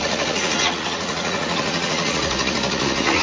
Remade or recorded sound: remade